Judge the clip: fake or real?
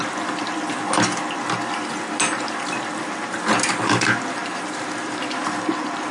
real